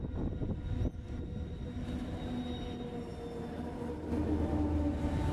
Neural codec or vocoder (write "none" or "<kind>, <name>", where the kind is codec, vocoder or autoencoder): none